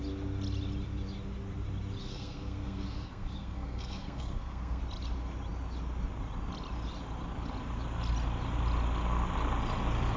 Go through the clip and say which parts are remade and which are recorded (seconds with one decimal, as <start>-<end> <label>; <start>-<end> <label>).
0.0-2.0 recorded; 2.0-4.8 remade; 4.8-10.2 recorded